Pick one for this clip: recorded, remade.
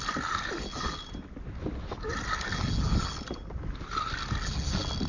recorded